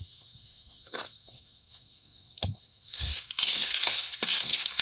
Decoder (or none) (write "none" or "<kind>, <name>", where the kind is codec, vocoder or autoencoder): codec, SNAC